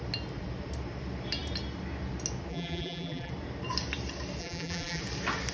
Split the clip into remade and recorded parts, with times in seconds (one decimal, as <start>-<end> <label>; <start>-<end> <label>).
0.0-2.5 recorded; 2.5-3.3 remade; 3.3-4.4 recorded; 4.4-5.0 remade; 5.0-5.5 recorded